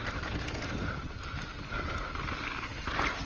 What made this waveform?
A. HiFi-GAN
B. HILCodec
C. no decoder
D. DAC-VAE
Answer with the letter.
C